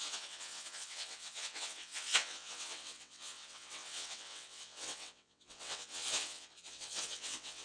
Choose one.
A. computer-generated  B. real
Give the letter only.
A